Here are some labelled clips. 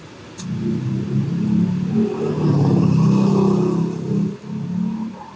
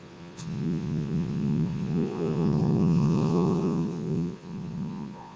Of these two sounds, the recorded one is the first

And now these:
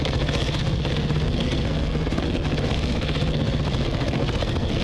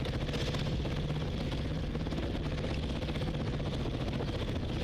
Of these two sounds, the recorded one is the second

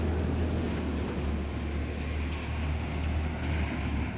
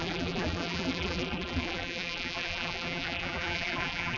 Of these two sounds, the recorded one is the first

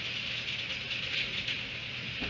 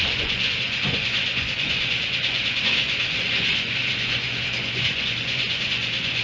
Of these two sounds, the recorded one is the first